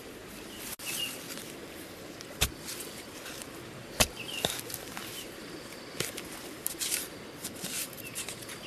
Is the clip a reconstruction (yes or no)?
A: no